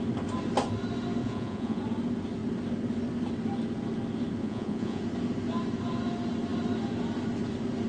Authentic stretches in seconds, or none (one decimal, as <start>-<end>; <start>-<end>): 0.0-1.2; 1.8-4.4; 5.0-7.9